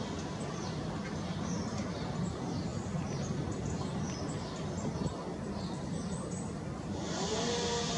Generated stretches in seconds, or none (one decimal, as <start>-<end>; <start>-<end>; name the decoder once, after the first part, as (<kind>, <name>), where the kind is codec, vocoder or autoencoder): none